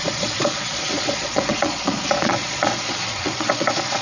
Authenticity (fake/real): fake